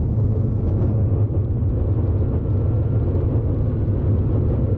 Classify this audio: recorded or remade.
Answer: recorded